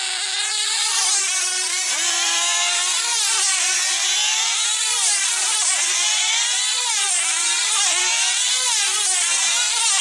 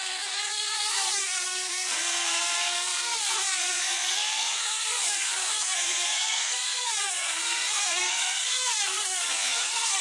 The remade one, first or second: second